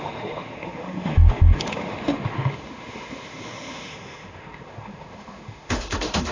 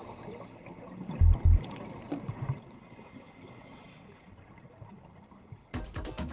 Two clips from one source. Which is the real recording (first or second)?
second